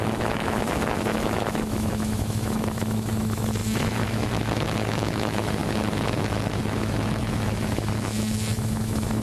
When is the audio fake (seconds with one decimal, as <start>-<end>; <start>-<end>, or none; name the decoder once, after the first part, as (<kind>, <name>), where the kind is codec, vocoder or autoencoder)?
0.0-9.2 (autoencoder, DAC-VAE)